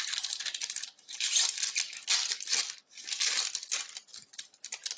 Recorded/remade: recorded